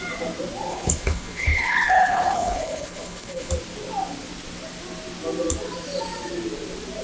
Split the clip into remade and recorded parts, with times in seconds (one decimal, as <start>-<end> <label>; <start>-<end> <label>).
0.0-0.7 recorded; 0.7-3.5 remade; 3.5-7.0 recorded